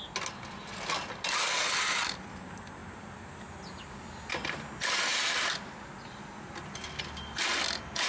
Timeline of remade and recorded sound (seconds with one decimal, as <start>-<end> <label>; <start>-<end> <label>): 0.0-2.8 recorded; 2.8-3.3 remade; 3.3-5.1 recorded; 5.1-5.7 remade; 5.7-8.1 recorded